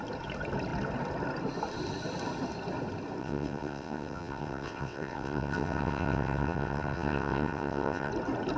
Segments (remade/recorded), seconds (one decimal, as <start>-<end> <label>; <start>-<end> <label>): 0.0-3.2 recorded; 3.2-8.1 remade; 8.1-8.6 recorded